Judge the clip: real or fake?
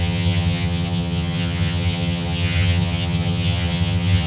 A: fake